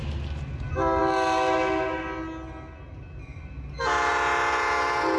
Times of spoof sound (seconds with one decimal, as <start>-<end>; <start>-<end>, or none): none